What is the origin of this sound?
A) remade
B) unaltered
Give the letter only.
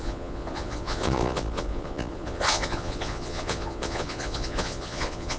A